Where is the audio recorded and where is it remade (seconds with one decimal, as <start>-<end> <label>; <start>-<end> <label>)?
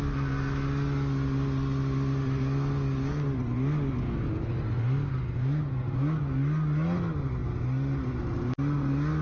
0.0-9.2 recorded